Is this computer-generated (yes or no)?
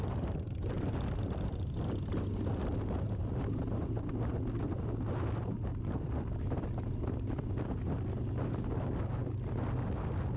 no